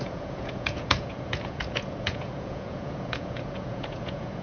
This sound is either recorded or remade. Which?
remade